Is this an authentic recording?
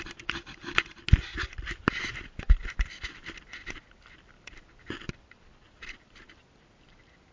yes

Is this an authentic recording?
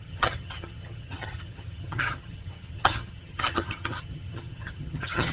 no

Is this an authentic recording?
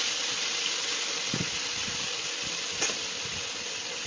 yes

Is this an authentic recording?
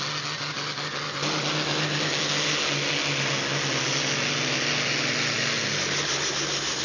yes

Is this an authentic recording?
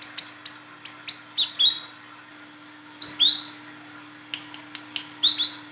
yes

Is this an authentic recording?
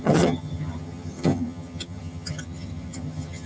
no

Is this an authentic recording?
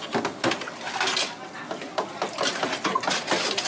yes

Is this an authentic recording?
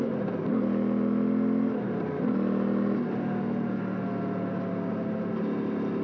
yes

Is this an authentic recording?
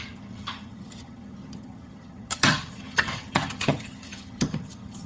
no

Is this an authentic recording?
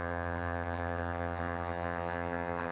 no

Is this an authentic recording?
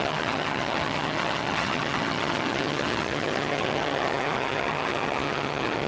no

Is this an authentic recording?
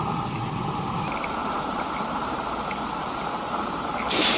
yes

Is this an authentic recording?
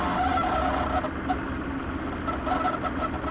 yes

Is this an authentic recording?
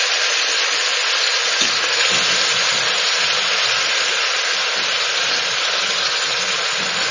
yes